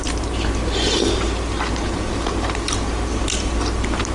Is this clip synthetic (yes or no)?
no